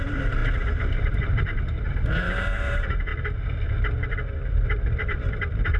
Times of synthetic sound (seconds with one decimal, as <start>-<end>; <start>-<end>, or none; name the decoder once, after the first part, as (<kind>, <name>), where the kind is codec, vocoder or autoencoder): 0.0-3.1 (vocoder, BigVGAN v2); 4.5-5.8